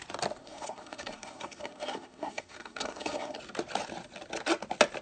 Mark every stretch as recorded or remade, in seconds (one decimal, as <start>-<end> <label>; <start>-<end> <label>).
0.0-0.4 recorded; 0.4-3.4 remade; 3.4-5.0 recorded